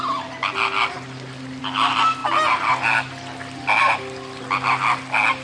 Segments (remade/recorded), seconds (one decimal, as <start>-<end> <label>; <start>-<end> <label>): 0.0-5.4 recorded